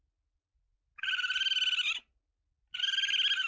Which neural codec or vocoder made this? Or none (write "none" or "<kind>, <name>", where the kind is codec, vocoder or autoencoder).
none